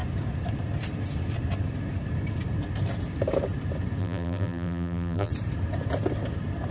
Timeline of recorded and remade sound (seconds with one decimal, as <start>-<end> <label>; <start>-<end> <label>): 0.0-4.0 recorded; 4.0-5.3 remade; 5.3-6.7 recorded